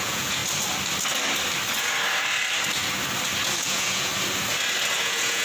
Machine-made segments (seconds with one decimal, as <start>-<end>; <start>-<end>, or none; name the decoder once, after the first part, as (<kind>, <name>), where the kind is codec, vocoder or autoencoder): 0.0-0.4 (vocoder, Vocos); 3.6-4.1; 5.0-5.4